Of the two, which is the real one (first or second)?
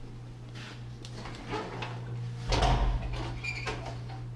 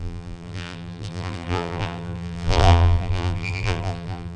first